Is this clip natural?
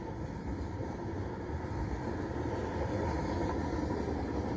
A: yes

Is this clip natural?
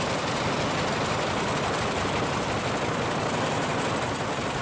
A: yes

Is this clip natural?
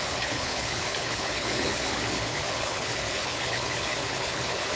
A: no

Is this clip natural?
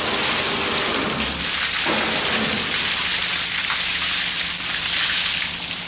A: yes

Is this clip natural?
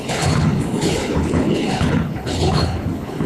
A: no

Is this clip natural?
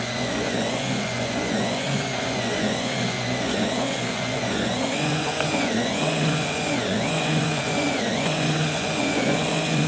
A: no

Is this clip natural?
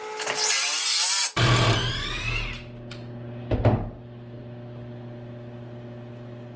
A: yes